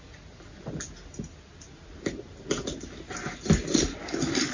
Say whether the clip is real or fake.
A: real